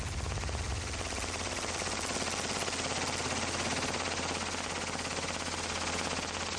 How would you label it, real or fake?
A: real